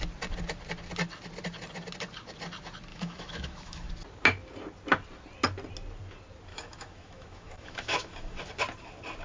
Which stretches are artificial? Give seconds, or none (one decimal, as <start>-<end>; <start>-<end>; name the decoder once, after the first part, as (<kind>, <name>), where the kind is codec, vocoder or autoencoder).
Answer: 2.9-3.9 (autoencoder, DAC-VAE); 6.5-8.4